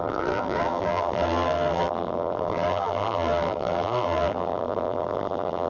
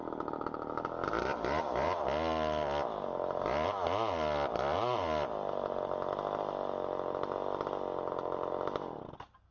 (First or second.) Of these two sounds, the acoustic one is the second